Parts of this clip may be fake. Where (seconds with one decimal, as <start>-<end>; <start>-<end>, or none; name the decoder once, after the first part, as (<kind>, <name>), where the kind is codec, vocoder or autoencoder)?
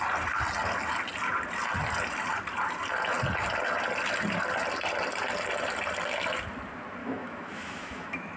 7.0-8.4 (autoencoder, DAC-VAE)